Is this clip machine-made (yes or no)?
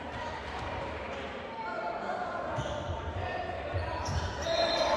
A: yes